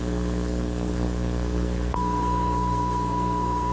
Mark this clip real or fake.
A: fake